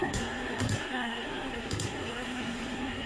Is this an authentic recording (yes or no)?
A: no